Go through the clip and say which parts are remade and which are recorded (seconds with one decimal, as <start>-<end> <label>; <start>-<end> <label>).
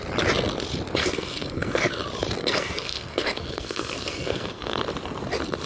0.0-1.0 recorded; 1.0-1.9 remade; 1.9-2.4 recorded; 2.4-4.8 remade; 4.8-5.7 recorded